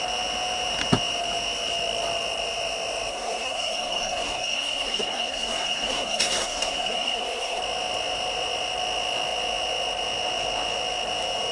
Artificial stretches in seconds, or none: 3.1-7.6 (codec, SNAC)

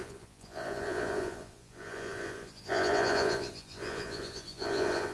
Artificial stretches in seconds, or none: 0.0-5.1 (vocoder, Vocos)